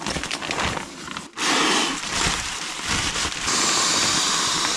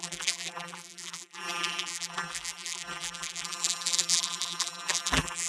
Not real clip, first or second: second